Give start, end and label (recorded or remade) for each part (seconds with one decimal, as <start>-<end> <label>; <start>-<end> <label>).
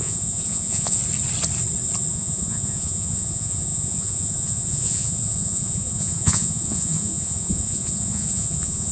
0.0-1.0 remade; 1.0-2.1 recorded; 2.1-8.9 remade